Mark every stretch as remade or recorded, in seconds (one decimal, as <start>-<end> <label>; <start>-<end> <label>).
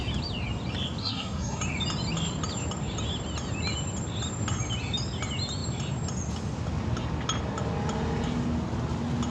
0.0-1.0 recorded; 1.0-1.6 remade; 1.6-9.3 recorded